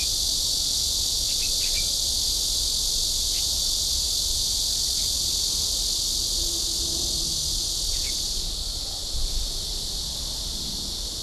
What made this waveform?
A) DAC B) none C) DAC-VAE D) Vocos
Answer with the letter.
B